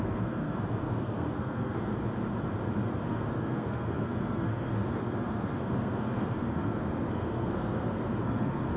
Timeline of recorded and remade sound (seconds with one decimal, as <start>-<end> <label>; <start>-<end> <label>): 0.0-1.9 remade; 1.9-3.0 recorded; 3.0-8.8 remade